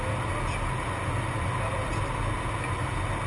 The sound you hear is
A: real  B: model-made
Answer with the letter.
A